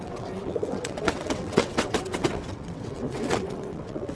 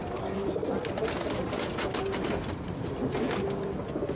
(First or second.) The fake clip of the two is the first